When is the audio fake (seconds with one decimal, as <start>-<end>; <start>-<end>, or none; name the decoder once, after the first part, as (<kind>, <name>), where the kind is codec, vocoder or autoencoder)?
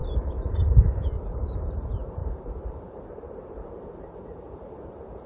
0.0-5.3 (vocoder, BigVGAN v2)